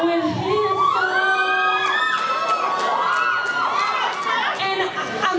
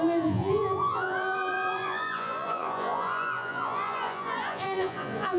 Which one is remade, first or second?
second